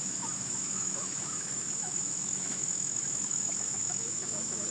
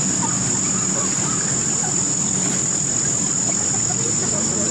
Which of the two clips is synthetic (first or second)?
first